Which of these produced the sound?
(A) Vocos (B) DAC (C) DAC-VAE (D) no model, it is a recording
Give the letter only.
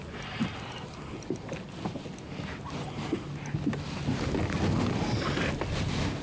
D